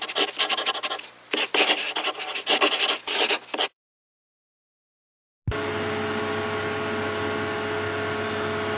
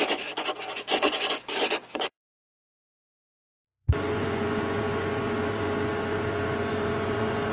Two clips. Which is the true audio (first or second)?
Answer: first